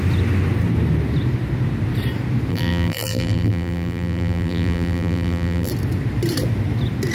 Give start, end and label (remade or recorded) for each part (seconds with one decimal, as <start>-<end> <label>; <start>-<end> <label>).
0.0-2.5 recorded; 2.5-5.7 remade; 5.7-7.1 recorded